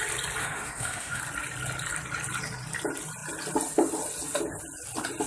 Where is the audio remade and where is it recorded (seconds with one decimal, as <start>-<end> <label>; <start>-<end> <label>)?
0.0-0.4 recorded; 0.4-1.2 remade; 1.2-5.3 recorded